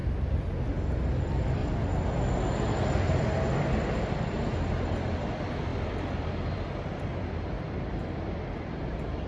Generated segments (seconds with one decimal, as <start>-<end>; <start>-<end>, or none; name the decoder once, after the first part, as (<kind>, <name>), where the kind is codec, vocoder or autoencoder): 1.1-1.6 (vocoder, BigVGAN v2); 2.9-9.3